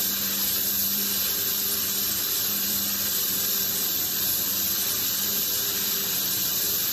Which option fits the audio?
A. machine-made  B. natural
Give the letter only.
A